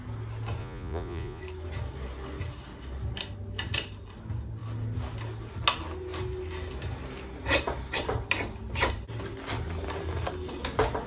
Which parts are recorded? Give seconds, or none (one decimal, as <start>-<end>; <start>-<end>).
0.0-0.6; 1.4-11.1